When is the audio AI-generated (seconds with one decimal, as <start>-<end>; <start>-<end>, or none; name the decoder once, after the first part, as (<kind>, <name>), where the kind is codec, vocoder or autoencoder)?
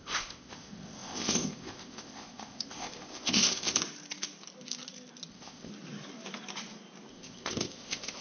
0.0-3.8 (codec, ZipCodec); 5.3-5.7; 7.1-8.2